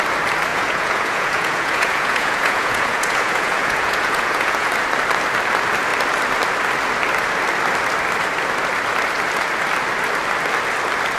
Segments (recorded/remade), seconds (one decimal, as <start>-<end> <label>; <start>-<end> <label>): 0.0-0.5 recorded; 0.5-4.7 remade; 4.7-11.2 recorded